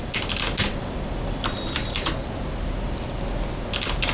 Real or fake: real